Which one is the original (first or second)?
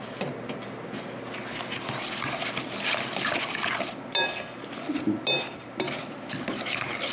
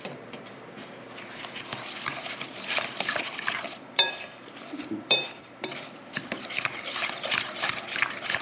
first